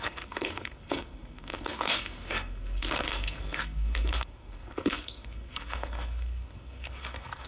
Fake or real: fake